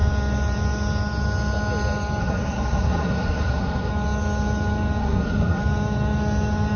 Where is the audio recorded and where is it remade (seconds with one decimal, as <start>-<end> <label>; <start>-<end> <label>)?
0.0-2.2 recorded; 2.2-3.9 remade; 3.9-5.0 recorded; 5.0-5.6 remade; 5.6-6.8 recorded